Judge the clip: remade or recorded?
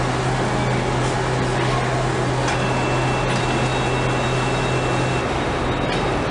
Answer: recorded